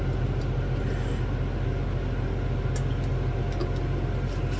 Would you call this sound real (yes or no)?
yes